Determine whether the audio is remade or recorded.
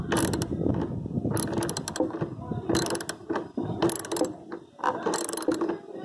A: recorded